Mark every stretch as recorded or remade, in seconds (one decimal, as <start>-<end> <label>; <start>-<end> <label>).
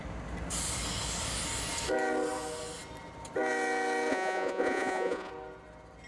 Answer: 0.0-4.1 recorded; 4.1-5.3 remade; 5.3-6.1 recorded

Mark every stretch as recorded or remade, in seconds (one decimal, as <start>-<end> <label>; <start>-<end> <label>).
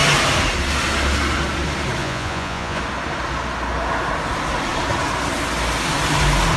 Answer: 0.0-2.0 recorded; 2.0-2.8 remade; 2.8-6.6 recorded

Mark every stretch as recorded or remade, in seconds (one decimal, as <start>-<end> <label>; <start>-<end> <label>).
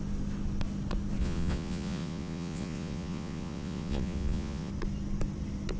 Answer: 0.0-1.2 recorded; 1.2-4.7 remade; 4.7-5.8 recorded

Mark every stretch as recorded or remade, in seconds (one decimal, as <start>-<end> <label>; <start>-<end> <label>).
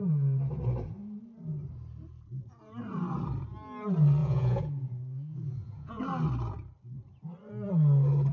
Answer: 0.0-4.2 recorded; 4.2-6.0 remade; 6.0-8.3 recorded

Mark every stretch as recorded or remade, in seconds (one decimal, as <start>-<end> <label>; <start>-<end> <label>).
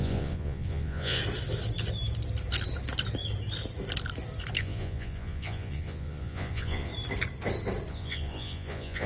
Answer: 0.0-1.2 remade; 1.2-4.6 recorded; 4.6-6.9 remade; 6.9-7.9 recorded; 7.9-9.1 remade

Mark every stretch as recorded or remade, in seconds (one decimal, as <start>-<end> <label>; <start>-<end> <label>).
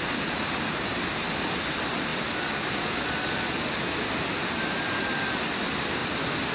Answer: 0.0-6.5 recorded